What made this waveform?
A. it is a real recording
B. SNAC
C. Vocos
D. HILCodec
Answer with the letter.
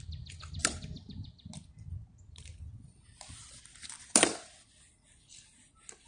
A